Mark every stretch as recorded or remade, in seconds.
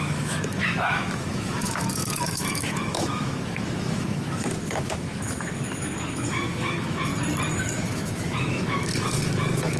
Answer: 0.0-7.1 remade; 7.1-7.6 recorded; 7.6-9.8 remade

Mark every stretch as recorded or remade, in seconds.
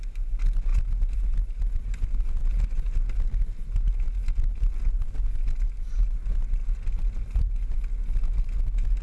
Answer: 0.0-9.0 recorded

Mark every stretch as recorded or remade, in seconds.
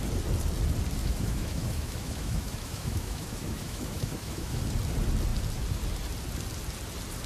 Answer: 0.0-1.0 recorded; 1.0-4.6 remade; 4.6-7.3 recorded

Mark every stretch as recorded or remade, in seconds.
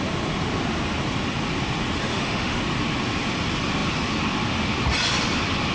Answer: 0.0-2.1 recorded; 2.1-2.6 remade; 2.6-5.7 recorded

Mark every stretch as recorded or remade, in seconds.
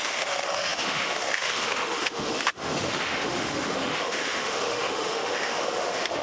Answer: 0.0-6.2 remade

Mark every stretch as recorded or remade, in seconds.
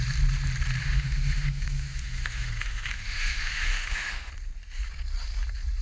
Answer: 0.0-0.8 recorded; 0.8-4.3 remade; 4.3-5.8 recorded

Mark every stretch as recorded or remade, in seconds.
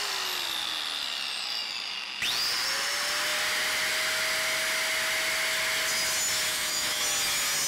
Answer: 0.0-6.5 recorded; 6.5-7.0 remade; 7.0-7.7 recorded